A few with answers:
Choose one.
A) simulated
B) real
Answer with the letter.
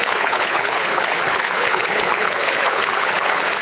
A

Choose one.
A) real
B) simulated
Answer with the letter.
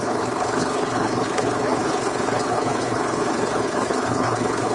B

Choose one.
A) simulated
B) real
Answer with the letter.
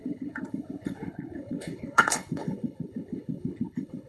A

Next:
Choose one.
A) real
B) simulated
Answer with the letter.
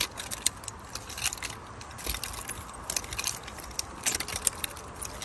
A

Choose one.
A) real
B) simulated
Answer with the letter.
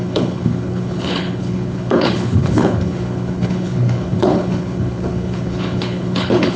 B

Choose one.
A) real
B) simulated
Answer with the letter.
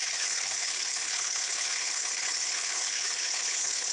B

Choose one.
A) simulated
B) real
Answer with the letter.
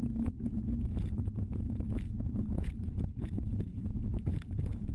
A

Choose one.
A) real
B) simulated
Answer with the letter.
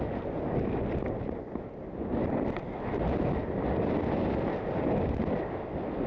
A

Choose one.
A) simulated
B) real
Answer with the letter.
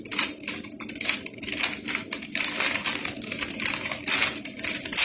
B